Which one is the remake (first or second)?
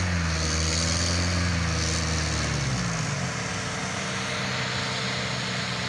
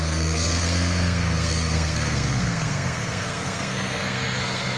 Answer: second